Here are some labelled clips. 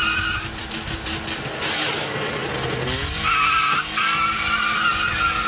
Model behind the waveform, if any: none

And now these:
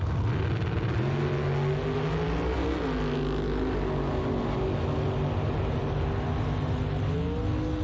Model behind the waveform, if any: none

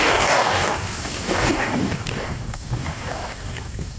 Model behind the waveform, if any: codec, DAC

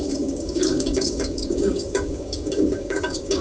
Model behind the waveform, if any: codec, DAC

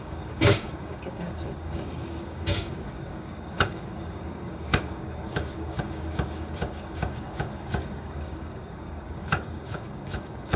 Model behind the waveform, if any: codec, DAC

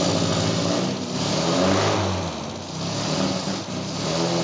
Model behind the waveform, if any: none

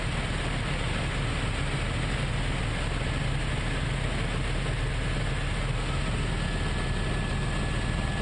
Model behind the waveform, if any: none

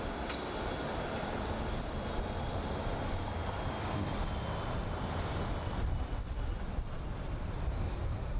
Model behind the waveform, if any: none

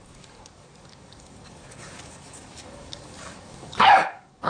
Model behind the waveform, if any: codec, DAC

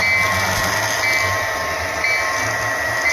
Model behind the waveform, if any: none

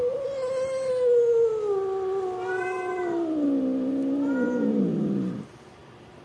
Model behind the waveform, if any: none